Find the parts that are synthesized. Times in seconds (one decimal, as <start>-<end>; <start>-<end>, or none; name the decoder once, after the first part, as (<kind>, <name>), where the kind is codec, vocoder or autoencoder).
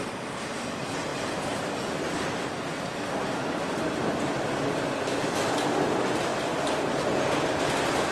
none